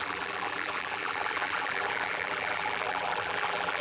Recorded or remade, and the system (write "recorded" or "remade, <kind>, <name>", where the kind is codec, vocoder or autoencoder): remade, vocoder, BigVGAN v2